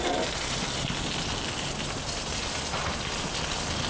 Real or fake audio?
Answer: real